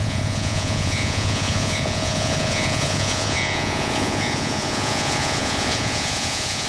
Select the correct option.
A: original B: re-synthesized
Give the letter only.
B